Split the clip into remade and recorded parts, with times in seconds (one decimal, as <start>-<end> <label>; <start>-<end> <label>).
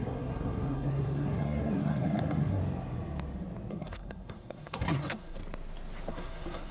0.0-2.6 remade; 2.6-3.7 recorded; 3.7-5.4 remade; 5.4-6.1 recorded; 6.1-6.7 remade